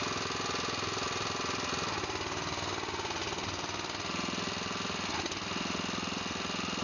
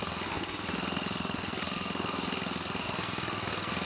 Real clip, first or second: first